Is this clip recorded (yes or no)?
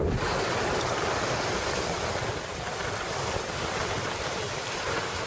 yes